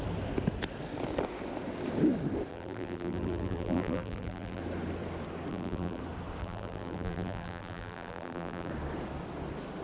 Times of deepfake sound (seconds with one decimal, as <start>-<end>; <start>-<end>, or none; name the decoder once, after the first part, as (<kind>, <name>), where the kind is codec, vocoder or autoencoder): 2.5-4.6 (vocoder, BigVGAN v2); 5.5-6.0; 6.4-8.7